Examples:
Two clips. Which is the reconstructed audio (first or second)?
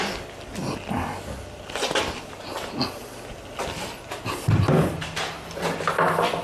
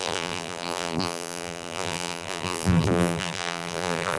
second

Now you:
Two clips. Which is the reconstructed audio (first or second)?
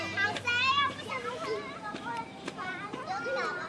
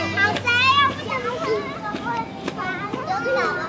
first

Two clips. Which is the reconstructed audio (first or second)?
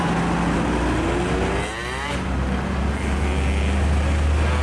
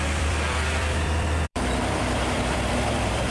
second